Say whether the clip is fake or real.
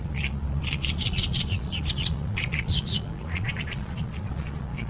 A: fake